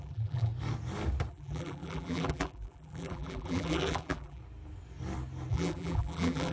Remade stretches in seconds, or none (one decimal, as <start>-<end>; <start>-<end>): 0.0-0.5; 1.3-4.4; 5.5-6.5

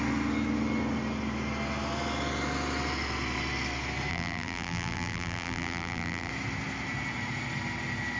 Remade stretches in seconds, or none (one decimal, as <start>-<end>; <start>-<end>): 4.1-6.3

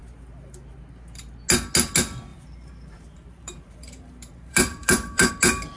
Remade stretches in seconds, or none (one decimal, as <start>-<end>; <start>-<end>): 2.3-5.3

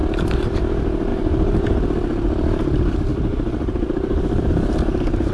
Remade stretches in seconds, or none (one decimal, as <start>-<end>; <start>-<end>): 1.1-1.6; 3.1-4.5